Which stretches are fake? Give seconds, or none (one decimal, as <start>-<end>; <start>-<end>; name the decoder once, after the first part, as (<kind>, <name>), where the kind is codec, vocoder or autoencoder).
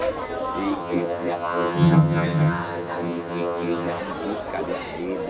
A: 0.8-4.0 (vocoder, HiFi-GAN)